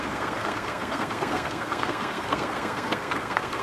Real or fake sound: fake